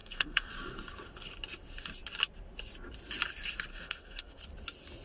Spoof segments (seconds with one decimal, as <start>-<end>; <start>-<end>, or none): 0.0-0.5; 3.7-4.4